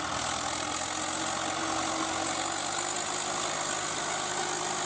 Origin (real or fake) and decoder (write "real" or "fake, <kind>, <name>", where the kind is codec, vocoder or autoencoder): real